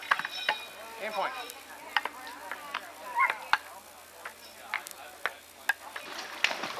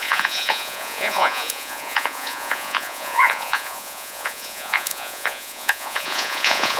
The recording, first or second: first